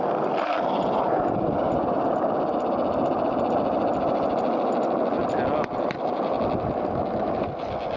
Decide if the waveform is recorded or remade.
recorded